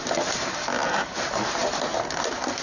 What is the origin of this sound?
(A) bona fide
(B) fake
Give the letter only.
A